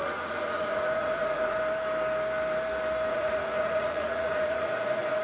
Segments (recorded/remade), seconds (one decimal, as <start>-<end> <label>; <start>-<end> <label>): 0.0-1.6 remade; 1.6-3.1 recorded; 3.1-5.2 remade